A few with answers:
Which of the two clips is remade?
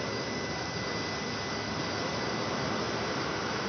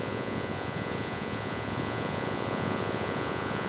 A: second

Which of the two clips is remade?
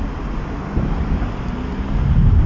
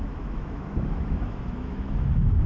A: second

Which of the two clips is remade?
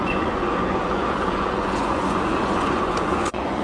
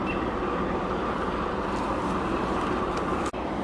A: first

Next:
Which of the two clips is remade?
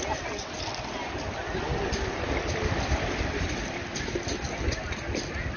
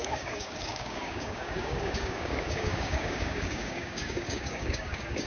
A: second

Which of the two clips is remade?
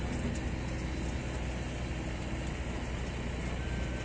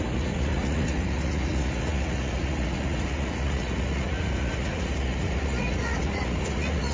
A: second